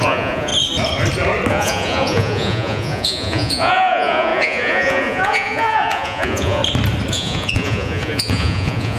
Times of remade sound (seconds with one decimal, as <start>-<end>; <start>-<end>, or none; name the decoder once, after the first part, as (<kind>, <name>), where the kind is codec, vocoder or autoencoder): 0.0-0.5 (vocoder, Vocos); 1.5-6.6; 7.1-9.0